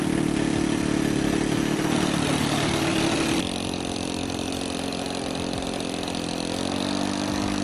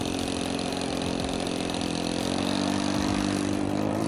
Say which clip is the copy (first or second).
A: second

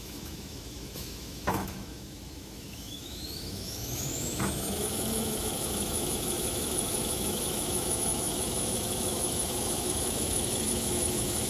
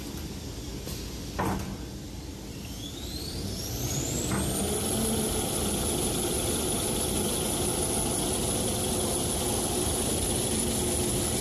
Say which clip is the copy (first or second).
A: first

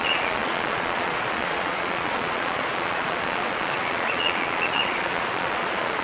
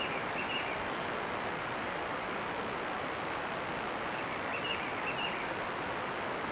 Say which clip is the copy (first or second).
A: first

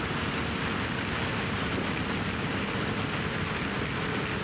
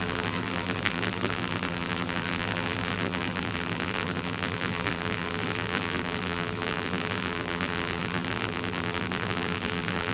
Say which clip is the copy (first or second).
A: second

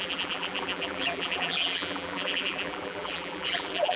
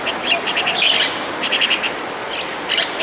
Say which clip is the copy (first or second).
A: first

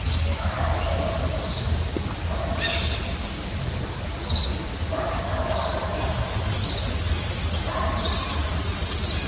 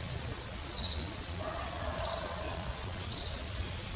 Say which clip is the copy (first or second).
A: second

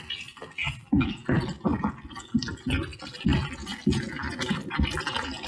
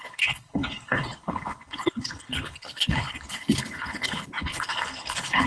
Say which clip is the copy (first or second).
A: second